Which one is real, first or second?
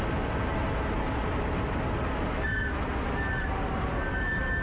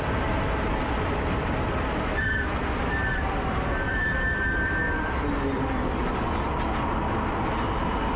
first